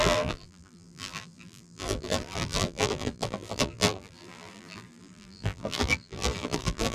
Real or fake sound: fake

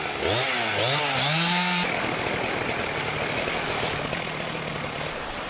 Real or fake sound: real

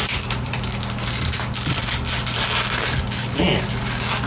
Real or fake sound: real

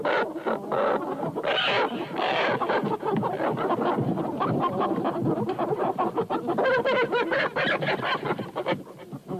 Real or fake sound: real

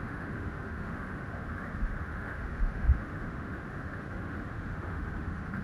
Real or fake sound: fake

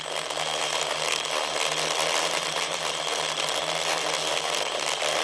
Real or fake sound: real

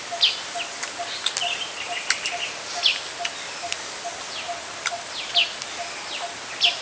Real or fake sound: real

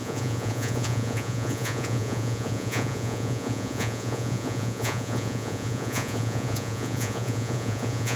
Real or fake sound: fake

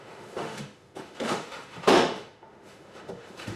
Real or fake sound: fake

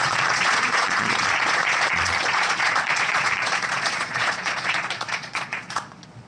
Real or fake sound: fake